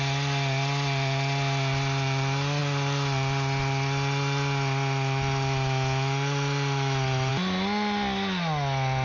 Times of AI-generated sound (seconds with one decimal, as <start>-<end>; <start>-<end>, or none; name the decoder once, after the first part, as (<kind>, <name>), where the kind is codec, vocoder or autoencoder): none